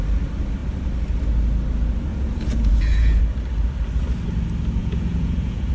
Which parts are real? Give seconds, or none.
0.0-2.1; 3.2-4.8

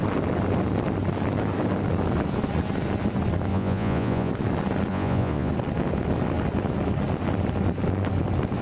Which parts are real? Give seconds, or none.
0.0-3.5; 4.3-4.9; 5.5-8.6

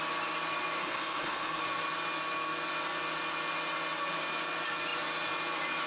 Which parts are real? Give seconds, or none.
0.0-0.8; 1.6-5.9

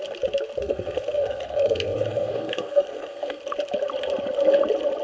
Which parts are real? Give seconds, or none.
0.0-0.6; 3.4-5.0

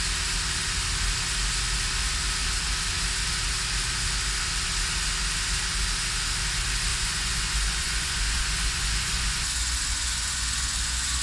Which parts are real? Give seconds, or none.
0.0-6.9

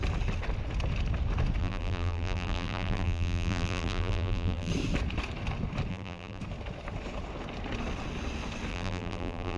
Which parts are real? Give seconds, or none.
0.0-1.6; 4.7-5.9; 6.4-8.7

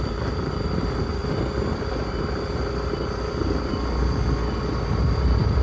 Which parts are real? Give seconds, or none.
1.2-4.6